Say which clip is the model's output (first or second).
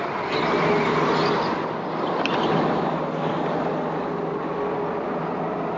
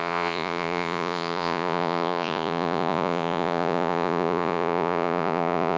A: second